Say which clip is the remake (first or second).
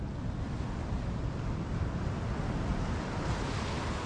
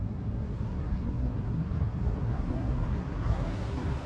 second